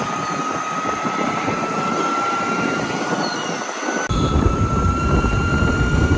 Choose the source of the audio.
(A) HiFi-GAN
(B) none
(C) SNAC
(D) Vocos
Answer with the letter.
B